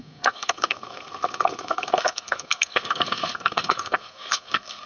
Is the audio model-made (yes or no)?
yes